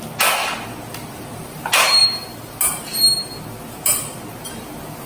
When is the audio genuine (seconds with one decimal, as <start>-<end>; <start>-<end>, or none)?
0.0-5.1